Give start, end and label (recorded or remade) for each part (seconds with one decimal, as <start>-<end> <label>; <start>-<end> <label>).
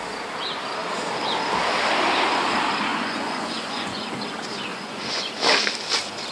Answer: 0.0-2.9 recorded; 2.9-4.1 remade; 4.1-4.7 recorded; 4.7-5.3 remade; 5.3-6.3 recorded